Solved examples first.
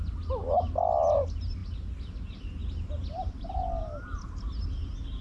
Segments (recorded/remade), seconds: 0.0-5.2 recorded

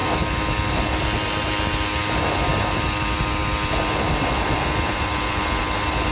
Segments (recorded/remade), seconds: 0.0-6.1 recorded

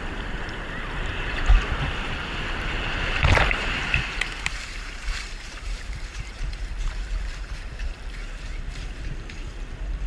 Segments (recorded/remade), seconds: 0.0-1.5 remade; 1.5-2.5 recorded; 2.5-10.1 remade

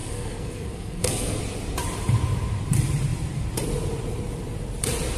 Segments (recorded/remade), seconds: 0.0-1.4 remade; 1.4-5.2 recorded

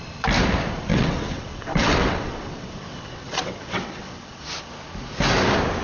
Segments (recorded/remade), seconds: 0.0-0.9 recorded; 0.9-4.4 remade; 4.4-5.8 recorded

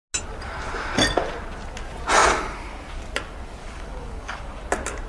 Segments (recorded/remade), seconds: 0.0-3.6 recorded; 3.6-4.6 remade; 4.6-5.1 recorded

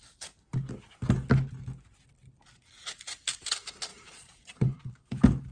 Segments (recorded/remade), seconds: 0.0-3.9 recorded; 3.9-4.8 remade; 4.8-5.5 recorded